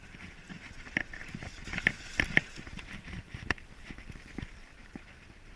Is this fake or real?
real